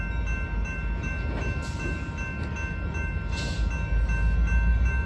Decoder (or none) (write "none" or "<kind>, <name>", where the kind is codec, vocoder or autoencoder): none